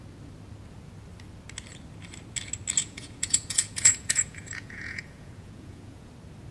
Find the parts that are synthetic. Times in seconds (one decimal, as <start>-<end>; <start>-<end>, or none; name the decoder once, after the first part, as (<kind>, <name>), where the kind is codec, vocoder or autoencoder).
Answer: 2.8-6.1 (vocoder, Vocos)